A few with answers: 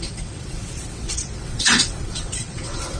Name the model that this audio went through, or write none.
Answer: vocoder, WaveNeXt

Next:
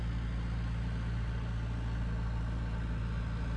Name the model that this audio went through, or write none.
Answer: none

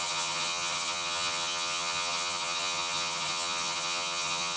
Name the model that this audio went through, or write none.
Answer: vocoder, HiFi-GAN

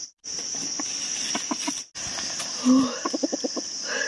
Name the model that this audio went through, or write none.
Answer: none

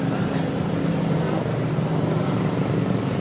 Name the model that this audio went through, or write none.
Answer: none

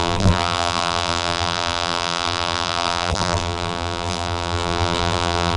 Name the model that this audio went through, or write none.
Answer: vocoder, BigVGAN v2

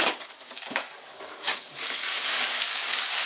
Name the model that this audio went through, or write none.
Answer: codec, DAC